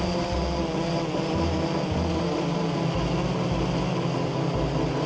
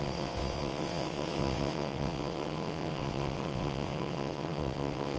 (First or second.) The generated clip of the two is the second